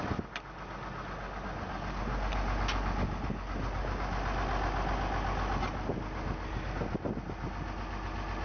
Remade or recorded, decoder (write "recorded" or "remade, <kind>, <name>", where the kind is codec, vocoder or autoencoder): recorded